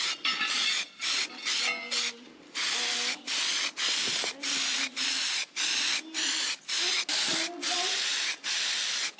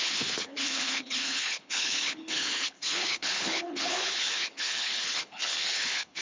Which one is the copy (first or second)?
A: second